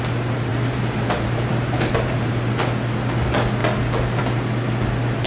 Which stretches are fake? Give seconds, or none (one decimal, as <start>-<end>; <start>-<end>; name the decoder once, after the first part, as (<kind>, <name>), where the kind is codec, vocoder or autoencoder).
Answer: 0.5-2.6 (vocoder, BigVGAN v2)